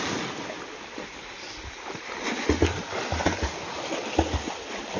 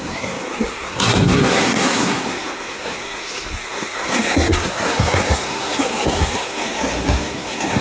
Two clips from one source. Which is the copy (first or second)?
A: second